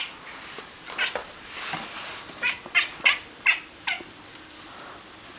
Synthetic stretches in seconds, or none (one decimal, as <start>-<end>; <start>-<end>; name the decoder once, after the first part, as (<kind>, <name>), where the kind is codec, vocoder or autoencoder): none